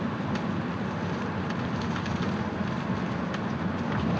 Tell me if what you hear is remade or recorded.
recorded